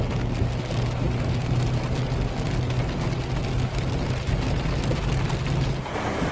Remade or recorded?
recorded